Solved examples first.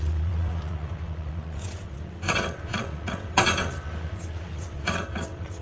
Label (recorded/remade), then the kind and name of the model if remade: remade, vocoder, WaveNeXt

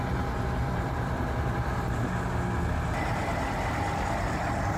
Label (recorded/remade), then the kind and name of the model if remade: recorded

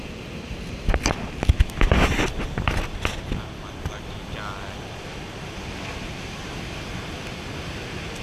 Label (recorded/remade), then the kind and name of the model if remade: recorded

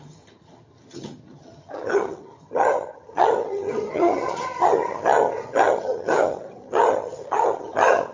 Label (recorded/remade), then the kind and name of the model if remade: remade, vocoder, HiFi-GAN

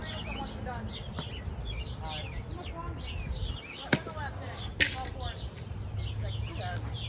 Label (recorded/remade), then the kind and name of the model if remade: recorded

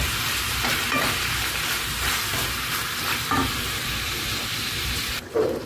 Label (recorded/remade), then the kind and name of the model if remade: remade, vocoder, BigVGAN v2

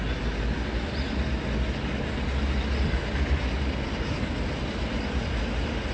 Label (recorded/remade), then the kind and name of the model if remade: recorded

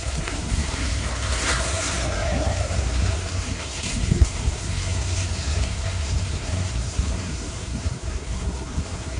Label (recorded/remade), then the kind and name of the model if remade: remade, codec, SNAC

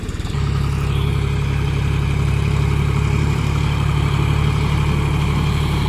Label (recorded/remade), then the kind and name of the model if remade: remade, vocoder, BigVGAN v2